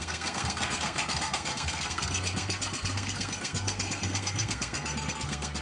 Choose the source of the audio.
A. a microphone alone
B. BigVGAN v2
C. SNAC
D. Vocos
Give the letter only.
C